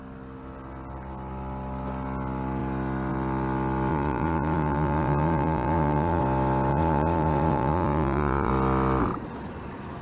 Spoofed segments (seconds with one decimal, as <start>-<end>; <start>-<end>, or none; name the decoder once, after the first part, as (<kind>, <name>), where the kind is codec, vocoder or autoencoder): 3.9-6.2 (vocoder, Vocos); 6.7-8.5